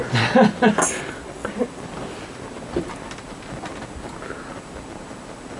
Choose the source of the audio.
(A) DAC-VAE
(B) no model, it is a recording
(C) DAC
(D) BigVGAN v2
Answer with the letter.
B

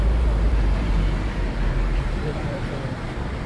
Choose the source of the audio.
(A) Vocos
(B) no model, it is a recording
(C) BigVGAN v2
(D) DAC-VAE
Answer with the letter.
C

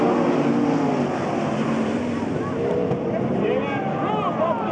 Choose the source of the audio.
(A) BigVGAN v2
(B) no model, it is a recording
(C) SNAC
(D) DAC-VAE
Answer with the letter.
B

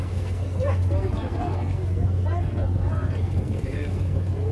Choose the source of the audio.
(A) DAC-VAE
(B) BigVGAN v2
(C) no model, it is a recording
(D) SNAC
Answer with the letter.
D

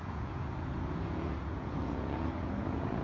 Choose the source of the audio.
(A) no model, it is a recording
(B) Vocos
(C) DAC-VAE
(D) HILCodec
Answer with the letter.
B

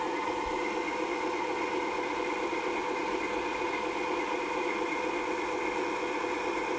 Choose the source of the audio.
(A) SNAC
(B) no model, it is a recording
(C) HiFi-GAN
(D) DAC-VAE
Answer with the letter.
B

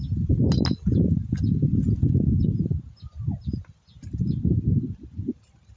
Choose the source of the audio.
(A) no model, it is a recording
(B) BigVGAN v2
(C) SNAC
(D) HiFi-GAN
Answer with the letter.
A